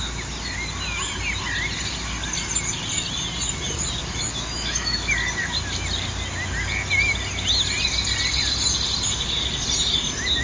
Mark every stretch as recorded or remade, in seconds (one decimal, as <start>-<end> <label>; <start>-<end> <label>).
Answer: 0.0-4.0 recorded; 4.0-5.1 remade; 5.1-10.4 recorded